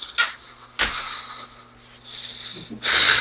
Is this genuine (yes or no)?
yes